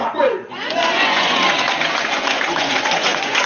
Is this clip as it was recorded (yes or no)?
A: no